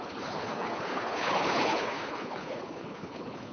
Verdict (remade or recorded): remade